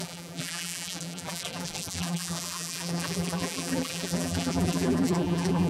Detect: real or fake fake